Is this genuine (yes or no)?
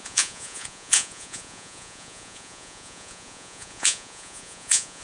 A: no